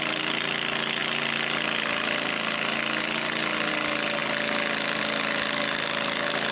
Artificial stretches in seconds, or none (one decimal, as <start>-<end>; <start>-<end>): none